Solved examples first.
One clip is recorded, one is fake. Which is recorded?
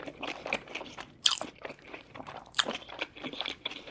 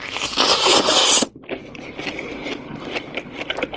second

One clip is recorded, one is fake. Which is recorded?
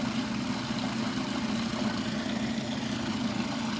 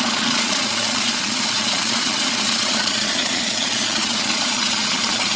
first